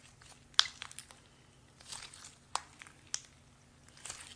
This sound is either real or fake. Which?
real